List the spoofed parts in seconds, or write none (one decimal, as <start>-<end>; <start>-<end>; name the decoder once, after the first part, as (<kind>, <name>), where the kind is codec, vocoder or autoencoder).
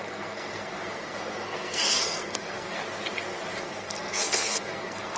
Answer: 0.0-2.8 (codec, SNAC); 3.6-5.2